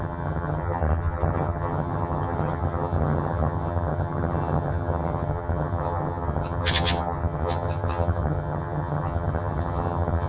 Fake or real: fake